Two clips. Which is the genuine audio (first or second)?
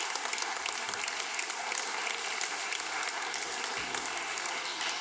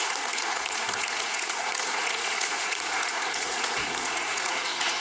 first